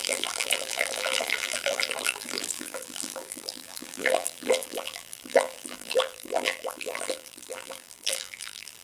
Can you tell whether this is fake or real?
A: fake